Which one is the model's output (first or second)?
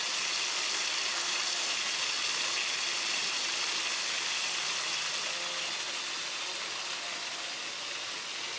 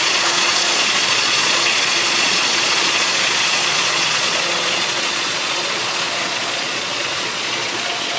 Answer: second